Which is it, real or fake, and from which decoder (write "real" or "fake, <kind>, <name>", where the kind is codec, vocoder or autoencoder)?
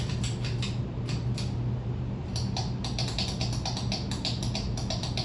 real